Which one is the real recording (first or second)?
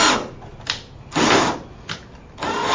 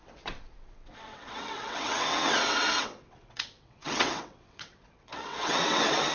first